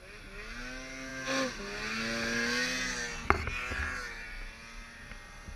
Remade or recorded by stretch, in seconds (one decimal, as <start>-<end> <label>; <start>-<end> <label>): 0.0-5.6 recorded